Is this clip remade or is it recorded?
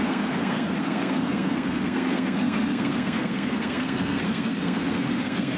remade